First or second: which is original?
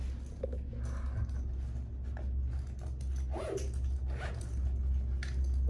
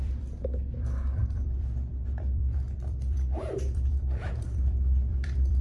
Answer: first